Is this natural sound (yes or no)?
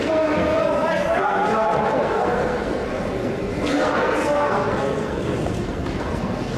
no